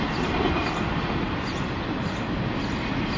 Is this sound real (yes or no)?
yes